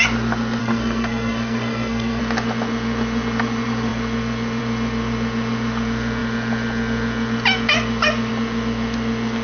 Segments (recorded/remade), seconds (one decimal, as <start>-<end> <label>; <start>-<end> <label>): 0.0-0.6 recorded; 0.6-2.2 remade; 2.2-9.4 recorded